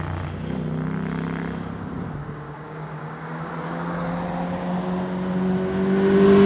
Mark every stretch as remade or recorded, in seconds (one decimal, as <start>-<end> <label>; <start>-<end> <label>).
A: 0.0-2.2 recorded; 2.2-3.5 remade; 3.5-6.5 recorded